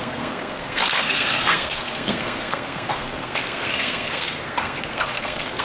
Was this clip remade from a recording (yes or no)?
yes